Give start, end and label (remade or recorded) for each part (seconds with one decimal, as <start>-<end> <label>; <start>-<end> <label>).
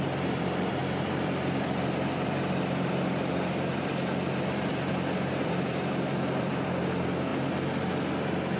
0.0-7.3 remade; 7.3-8.6 recorded